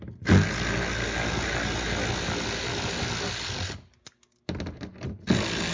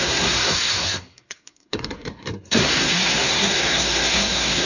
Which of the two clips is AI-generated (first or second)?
second